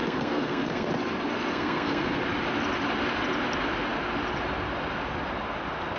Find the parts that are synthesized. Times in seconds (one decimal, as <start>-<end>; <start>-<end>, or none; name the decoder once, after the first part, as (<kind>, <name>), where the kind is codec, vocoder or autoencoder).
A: 0.0-0.9 (codec, SNAC); 1.5-2.2